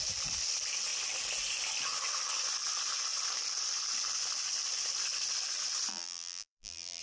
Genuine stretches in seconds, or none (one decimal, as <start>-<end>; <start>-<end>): 0.0-5.9